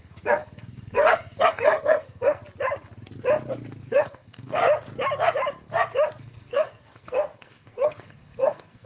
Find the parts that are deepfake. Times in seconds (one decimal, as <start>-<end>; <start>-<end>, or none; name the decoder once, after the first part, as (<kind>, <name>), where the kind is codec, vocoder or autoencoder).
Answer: 0.0-2.4 (codec, SNAC); 3.8-4.6; 6.2-8.9